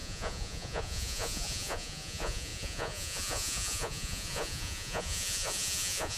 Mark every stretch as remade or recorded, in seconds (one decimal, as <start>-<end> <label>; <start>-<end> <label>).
0.0-6.2 remade